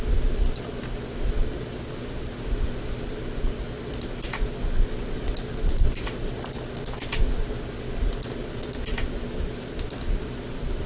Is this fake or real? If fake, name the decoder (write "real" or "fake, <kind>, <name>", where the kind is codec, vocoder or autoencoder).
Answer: real